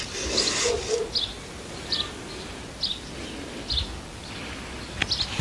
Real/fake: real